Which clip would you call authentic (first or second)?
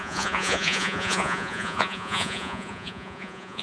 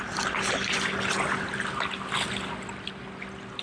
second